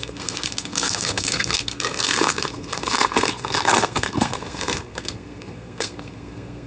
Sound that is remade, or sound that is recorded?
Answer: remade